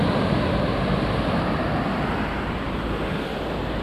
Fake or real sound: real